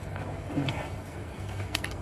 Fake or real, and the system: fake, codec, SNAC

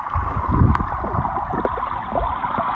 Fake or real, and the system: real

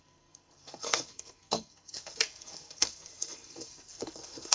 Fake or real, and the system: fake, codec, SNAC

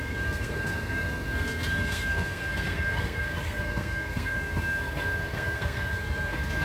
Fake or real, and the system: fake, codec, SNAC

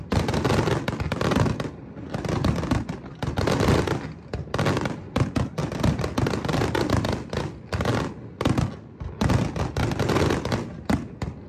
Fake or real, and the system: real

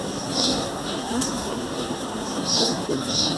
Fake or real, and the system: fake, codec, SNAC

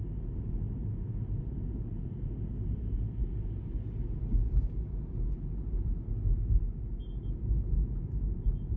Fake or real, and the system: real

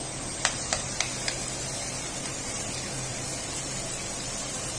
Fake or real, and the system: real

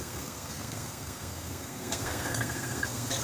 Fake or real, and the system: fake, codec, SNAC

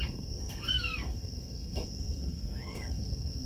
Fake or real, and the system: fake, codec, SNAC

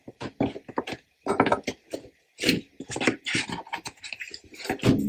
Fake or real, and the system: real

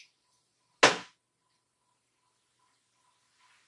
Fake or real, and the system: real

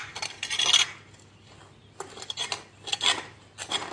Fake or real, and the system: real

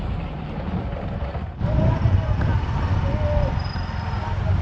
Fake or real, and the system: real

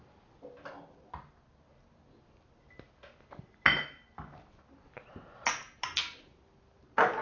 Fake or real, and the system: real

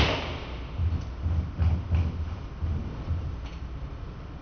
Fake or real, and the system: real